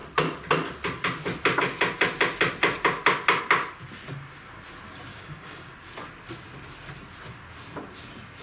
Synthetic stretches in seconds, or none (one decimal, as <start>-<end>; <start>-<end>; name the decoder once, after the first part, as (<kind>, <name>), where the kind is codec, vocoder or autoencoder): 5.1-5.7 (codec, DAC)